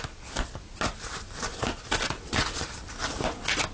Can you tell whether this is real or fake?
real